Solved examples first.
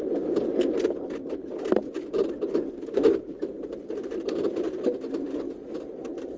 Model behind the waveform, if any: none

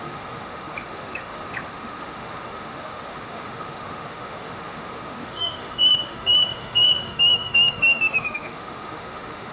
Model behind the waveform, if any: autoencoder, DAC-VAE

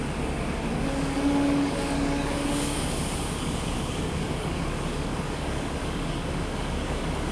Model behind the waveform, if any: codec, DAC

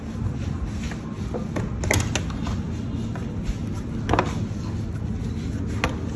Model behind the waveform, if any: none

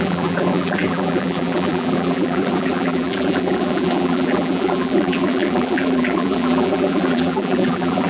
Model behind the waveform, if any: vocoder, BigVGAN v2